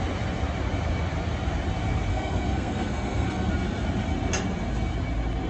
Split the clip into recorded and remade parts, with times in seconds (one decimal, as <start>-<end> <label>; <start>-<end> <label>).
0.0-2.1 recorded; 2.1-3.5 remade; 3.5-5.5 recorded